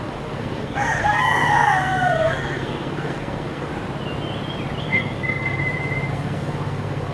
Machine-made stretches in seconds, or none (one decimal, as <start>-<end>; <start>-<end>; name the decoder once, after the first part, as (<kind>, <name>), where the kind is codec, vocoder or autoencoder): 0.0-3.7 (codec, SNAC); 4.8-5.6; 6.1-7.1